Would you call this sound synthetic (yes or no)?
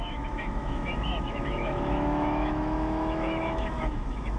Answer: yes